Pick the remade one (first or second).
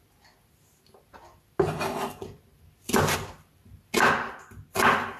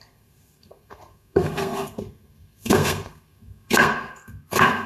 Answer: second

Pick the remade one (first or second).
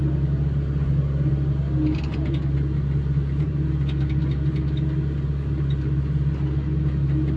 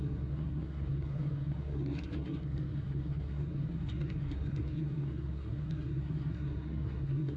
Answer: second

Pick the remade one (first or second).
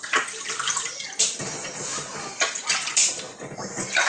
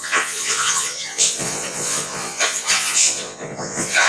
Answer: second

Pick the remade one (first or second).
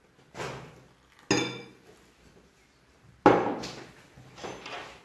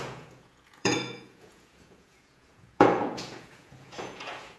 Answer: second